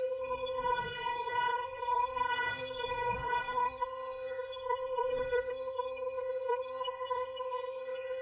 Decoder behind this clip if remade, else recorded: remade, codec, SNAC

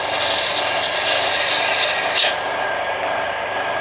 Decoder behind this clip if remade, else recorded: recorded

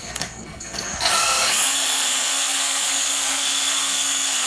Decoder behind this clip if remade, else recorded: remade, codec, SNAC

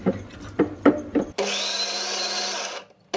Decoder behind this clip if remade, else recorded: recorded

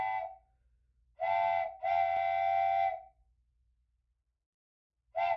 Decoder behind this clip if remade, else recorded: recorded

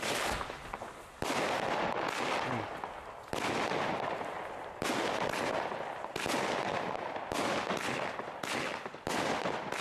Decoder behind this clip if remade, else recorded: recorded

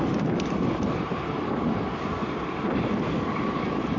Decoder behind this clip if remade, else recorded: recorded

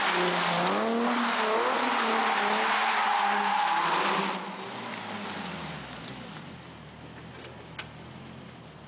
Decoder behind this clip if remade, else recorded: recorded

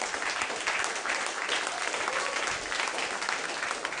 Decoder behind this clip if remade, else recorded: recorded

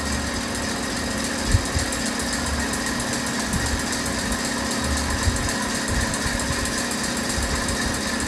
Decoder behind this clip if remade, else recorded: recorded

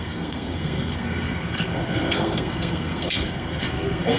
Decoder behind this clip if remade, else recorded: remade, codec, SNAC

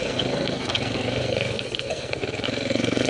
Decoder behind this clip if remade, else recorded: remade, codec, SNAC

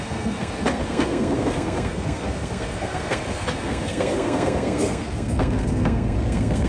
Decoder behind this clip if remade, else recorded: remade, codec, SNAC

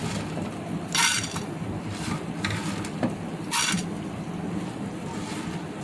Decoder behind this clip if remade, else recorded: recorded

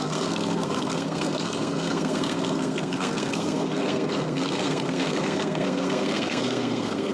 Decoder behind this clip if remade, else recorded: remade, codec, SNAC